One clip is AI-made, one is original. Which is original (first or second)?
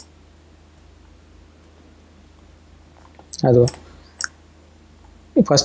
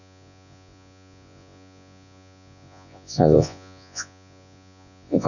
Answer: first